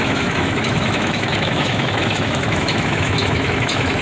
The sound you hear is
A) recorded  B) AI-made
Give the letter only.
B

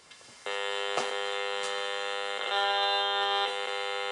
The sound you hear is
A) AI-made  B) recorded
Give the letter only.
A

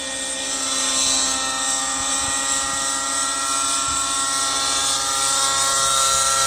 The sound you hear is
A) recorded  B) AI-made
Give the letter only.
A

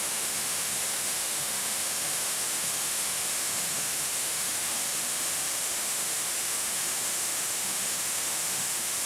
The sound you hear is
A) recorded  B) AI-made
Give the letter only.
B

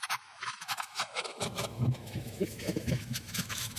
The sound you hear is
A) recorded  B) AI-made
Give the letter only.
B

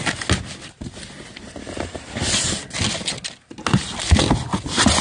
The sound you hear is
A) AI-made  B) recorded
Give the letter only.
B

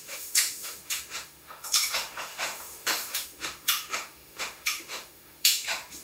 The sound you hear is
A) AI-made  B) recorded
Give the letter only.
A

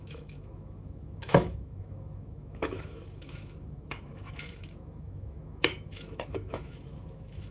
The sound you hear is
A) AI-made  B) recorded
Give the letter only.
A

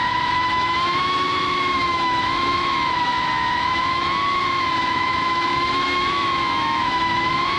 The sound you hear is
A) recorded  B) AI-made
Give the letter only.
B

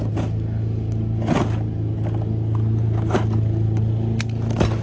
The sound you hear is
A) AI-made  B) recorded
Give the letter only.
B